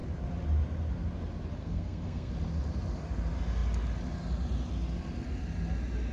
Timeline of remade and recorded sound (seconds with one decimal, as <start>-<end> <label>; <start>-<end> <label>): 0.0-1.6 recorded; 1.6-2.3 remade; 2.3-6.1 recorded